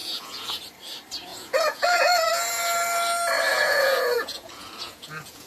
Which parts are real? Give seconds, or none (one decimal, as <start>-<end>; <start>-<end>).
0.6-1.3; 2.3-3.5